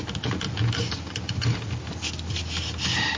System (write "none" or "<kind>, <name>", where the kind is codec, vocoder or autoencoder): none